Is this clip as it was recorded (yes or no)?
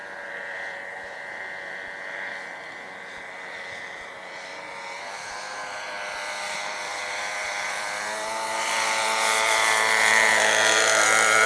no